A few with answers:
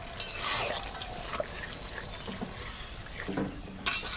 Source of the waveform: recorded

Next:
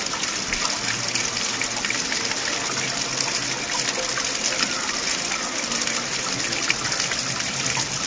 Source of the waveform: recorded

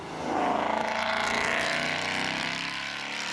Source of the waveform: recorded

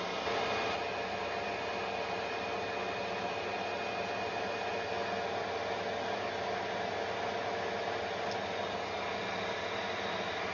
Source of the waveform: recorded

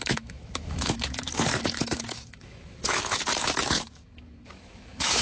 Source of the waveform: remade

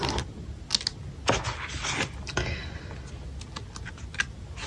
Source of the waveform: recorded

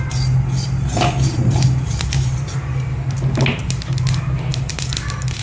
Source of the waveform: recorded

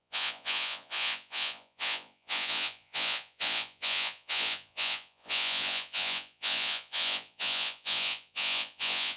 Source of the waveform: remade